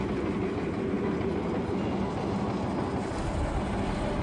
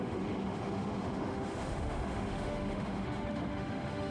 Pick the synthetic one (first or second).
second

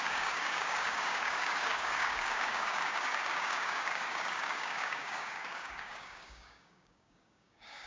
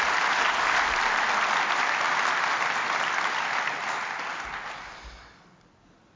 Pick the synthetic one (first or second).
first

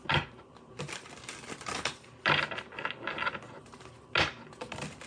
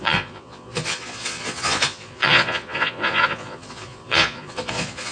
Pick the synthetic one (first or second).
second